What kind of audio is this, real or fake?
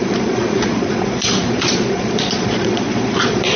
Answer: fake